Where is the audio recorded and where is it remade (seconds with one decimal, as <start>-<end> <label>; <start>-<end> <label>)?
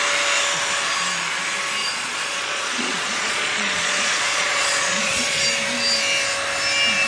0.0-1.8 recorded; 1.8-5.4 remade; 5.4-7.1 recorded